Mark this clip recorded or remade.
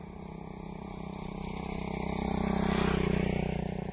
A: recorded